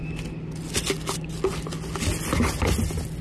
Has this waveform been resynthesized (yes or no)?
no